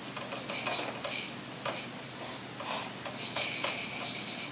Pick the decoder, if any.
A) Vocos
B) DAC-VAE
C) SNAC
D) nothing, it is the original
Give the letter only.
D